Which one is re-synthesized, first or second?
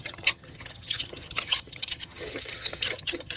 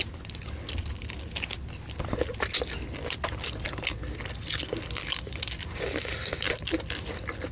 first